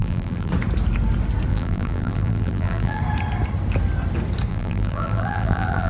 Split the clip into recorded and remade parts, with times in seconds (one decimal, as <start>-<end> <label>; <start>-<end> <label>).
0.0-0.5 remade; 0.5-1.5 recorded; 1.5-3.0 remade; 3.0-4.5 recorded; 4.5-5.9 remade

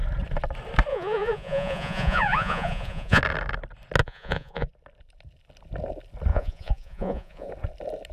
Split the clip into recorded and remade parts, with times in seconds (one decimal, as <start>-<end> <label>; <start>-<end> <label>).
0.0-0.9 recorded; 0.9-3.2 remade; 3.2-4.0 recorded; 4.0-4.7 remade; 4.7-6.3 recorded; 6.3-7.5 remade; 7.5-8.1 recorded